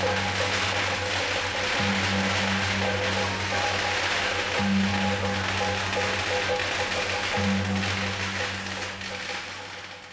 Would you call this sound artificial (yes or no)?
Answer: no